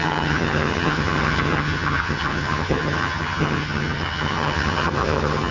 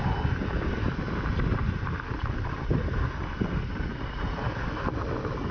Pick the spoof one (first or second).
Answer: first